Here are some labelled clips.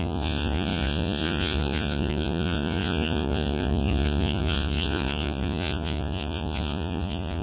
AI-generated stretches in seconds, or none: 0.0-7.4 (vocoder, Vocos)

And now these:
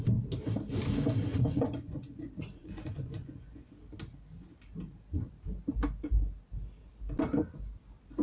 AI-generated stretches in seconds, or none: 1.3-2.2 (vocoder, Vocos); 2.6-3.7

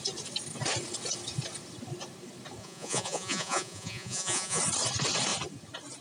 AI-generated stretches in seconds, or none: 2.6-4.6 (vocoder, Vocos)

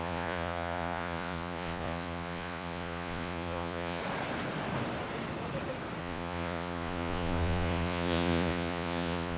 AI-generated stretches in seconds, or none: 0.0-4.0 (vocoder, Vocos); 6.0-9.4

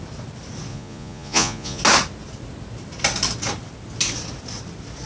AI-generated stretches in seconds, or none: 0.7-1.8 (vocoder, Vocos)